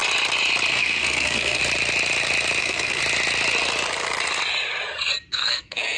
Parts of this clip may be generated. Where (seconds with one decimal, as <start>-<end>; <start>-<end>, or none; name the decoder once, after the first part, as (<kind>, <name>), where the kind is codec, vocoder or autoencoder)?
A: 0.7-1.6 (codec, SNAC); 2.6-3.0; 5.3-6.0